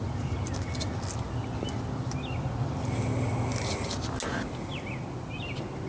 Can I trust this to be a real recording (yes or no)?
yes